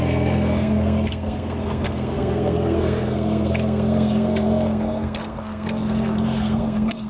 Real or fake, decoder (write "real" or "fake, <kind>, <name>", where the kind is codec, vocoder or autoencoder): fake, codec, SNAC